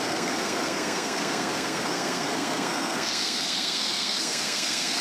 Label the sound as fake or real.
fake